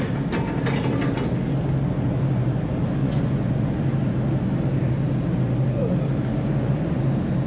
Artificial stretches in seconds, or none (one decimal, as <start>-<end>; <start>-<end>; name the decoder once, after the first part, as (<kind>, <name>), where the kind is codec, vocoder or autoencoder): 3.0-3.8 (vocoder, Vocos); 6.3-7.0